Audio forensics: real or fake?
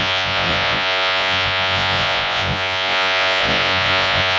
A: fake